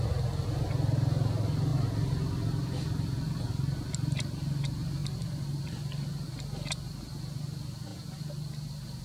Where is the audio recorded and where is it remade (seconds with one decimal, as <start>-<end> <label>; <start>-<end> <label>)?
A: 0.0-9.0 recorded